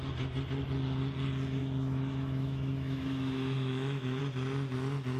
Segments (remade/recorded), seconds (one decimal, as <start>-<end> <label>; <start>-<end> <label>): 0.0-1.6 recorded; 1.6-4.2 remade; 4.2-5.2 recorded